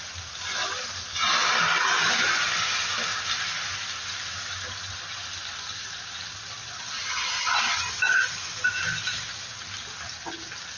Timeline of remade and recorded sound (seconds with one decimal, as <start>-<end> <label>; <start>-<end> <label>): 0.0-3.1 recorded; 3.1-5.0 remade; 5.0-5.4 recorded; 5.4-7.3 remade; 7.3-10.8 recorded

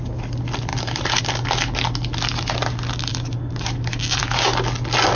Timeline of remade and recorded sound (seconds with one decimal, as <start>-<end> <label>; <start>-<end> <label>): 0.0-0.7 recorded; 0.7-1.2 remade; 1.2-3.1 recorded; 3.1-4.2 remade; 4.2-5.2 recorded